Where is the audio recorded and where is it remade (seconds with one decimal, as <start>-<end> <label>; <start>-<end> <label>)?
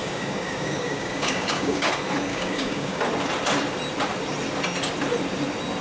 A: 0.0-1.9 remade; 1.9-2.3 recorded; 2.3-3.0 remade; 3.0-5.8 recorded